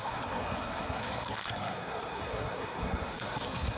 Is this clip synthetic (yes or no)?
yes